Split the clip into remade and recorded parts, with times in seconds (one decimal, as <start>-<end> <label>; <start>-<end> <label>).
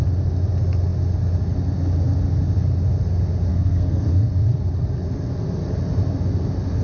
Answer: 0.0-3.5 recorded; 3.5-4.3 remade; 4.3-6.8 recorded